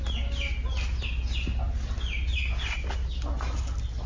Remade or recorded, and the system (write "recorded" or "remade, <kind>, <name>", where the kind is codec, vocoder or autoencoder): recorded